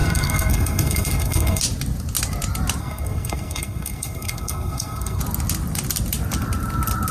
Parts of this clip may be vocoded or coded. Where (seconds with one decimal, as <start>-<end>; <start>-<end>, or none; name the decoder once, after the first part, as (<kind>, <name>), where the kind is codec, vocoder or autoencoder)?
0.0-1.6 (codec, SNAC); 2.8-5.2